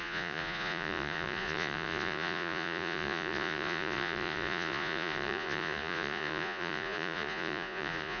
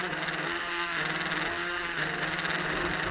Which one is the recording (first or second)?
second